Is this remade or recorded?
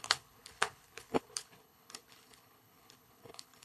remade